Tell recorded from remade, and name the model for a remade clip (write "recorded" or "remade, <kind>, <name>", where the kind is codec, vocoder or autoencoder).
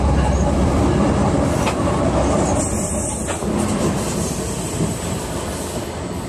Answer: recorded